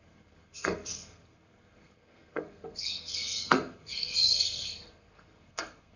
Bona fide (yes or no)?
no